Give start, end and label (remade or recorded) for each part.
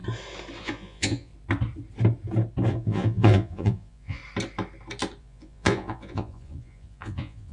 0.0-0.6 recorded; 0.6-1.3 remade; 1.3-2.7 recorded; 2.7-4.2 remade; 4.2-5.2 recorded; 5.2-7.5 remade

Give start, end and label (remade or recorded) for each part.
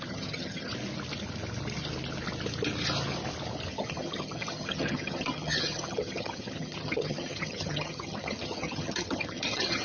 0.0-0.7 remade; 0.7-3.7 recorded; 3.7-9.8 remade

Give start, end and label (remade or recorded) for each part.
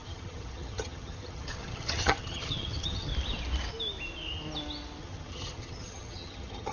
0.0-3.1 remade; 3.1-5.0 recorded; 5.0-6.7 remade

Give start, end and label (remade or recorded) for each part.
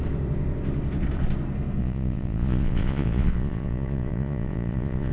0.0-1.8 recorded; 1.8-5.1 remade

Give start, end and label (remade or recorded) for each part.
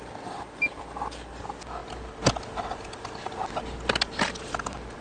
0.0-5.0 recorded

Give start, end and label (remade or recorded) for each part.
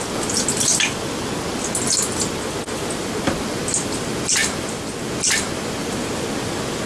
0.0-6.9 recorded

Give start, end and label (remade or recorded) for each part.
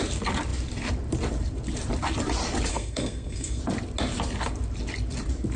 0.0-2.7 recorded; 2.7-3.6 remade; 3.6-5.6 recorded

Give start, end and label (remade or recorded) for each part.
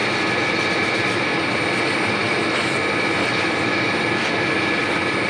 0.0-5.3 recorded